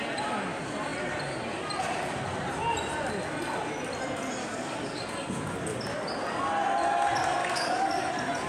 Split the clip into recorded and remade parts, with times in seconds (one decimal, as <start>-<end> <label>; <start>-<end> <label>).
0.0-4.4 recorded; 4.4-5.0 remade; 5.0-7.4 recorded; 7.4-8.1 remade; 8.1-8.5 recorded